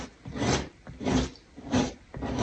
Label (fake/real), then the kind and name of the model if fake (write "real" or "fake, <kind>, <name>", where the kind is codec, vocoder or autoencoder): real